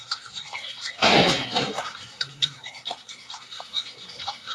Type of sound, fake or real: fake